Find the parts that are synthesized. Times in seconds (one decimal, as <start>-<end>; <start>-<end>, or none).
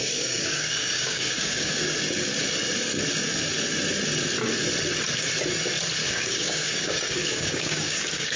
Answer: 0.0-1.8; 6.0-8.4